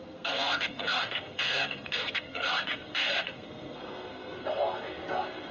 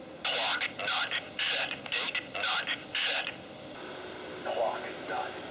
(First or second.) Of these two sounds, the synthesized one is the first